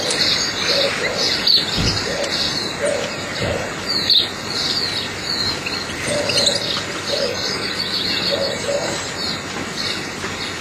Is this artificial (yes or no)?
no